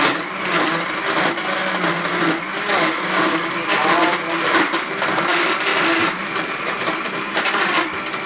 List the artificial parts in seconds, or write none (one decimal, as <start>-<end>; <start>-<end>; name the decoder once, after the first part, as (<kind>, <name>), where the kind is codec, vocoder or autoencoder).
5.7-7.7 (vocoder, BigVGAN v2)